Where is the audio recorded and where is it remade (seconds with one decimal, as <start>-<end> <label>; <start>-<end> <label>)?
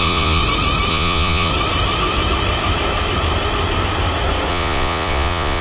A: 0.0-0.4 remade; 0.4-0.9 recorded; 0.9-1.5 remade; 1.5-4.5 recorded; 4.5-5.6 remade